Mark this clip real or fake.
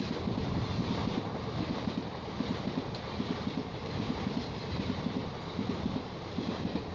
fake